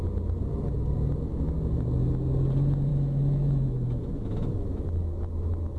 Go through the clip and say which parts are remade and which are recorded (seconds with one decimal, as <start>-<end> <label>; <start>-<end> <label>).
0.0-2.9 recorded; 2.9-4.8 remade; 4.8-5.8 recorded